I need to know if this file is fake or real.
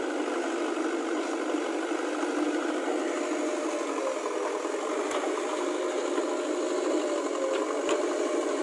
real